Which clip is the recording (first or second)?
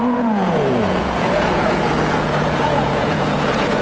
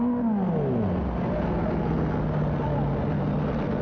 second